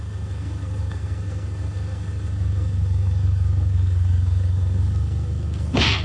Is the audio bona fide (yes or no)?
no